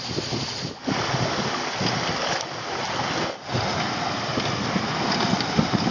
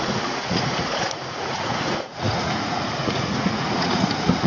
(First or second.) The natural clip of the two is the first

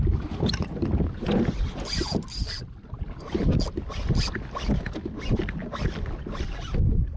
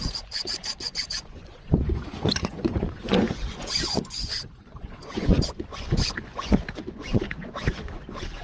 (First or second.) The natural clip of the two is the first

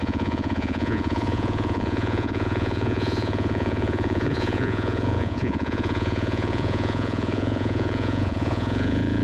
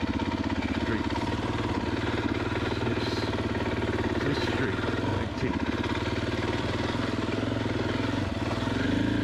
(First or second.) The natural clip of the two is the second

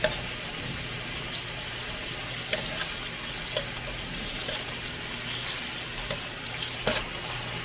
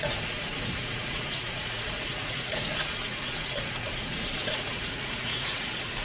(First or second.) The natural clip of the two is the first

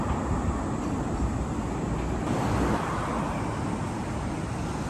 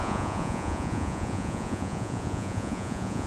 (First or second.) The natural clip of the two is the first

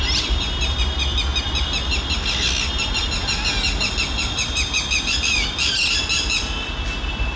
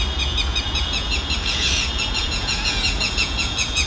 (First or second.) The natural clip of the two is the first